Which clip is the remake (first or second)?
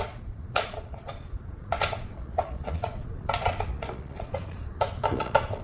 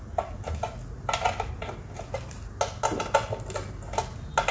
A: first